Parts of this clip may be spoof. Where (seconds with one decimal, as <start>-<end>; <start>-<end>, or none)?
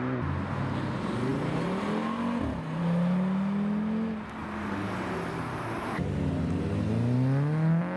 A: 4.4-6.6